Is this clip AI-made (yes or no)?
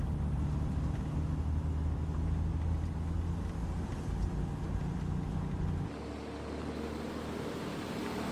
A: no